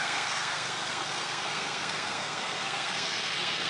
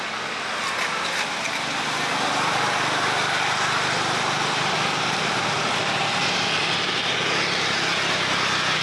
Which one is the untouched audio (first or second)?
second